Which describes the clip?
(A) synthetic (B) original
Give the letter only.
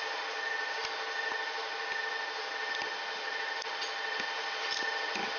B